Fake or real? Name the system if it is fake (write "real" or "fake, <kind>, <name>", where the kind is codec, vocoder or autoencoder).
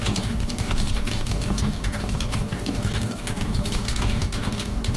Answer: fake, codec, DAC